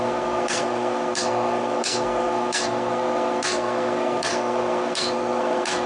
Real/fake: fake